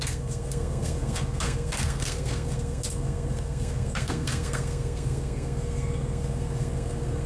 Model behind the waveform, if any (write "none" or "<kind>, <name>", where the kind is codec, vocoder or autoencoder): codec, SNAC